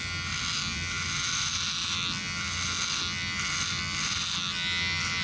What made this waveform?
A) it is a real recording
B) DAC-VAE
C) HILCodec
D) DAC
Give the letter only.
A